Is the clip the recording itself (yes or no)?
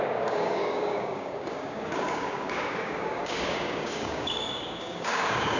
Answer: no